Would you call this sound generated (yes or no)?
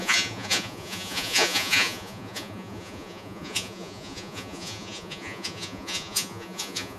yes